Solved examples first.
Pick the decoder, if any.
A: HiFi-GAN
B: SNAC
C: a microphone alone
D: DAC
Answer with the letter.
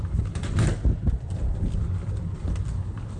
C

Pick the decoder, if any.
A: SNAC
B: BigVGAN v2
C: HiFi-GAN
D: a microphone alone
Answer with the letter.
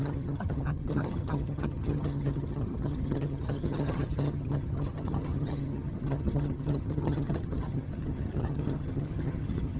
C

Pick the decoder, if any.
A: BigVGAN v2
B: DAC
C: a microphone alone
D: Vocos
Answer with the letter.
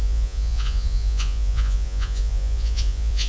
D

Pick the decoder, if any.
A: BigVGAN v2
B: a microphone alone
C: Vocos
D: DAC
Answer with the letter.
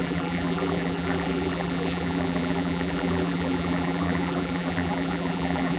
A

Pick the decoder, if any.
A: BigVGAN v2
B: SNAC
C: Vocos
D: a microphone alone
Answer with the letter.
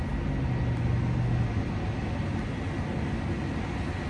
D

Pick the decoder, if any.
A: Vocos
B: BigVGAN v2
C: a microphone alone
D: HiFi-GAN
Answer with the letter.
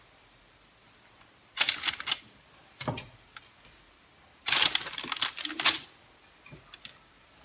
C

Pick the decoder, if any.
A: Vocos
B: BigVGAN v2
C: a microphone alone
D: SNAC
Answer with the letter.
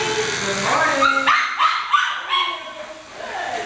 C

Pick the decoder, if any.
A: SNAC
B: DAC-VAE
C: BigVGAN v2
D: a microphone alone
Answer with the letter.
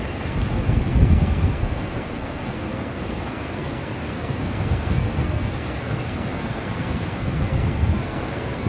A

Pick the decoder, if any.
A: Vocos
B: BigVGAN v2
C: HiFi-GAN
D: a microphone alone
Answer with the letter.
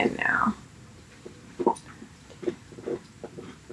B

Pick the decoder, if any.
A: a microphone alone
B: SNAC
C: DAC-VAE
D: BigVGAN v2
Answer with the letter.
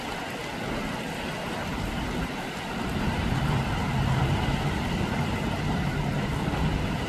A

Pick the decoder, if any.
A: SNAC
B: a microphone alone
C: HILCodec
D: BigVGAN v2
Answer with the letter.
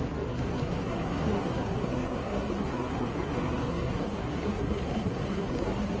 A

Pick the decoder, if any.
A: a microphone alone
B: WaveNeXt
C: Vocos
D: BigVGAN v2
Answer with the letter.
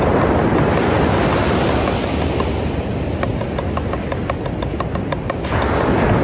A